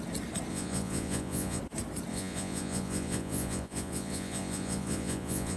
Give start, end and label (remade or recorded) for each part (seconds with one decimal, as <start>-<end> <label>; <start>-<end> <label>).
0.0-0.5 recorded; 0.5-1.6 remade; 1.6-2.1 recorded; 2.1-5.6 remade

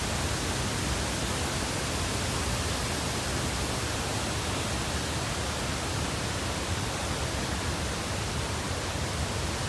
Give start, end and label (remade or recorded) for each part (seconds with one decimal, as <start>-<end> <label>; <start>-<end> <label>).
0.0-9.7 recorded